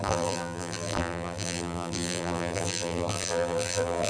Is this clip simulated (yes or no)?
yes